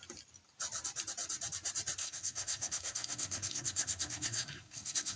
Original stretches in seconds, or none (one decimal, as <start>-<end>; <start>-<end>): 0.0-2.0